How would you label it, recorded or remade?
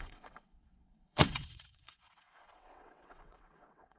remade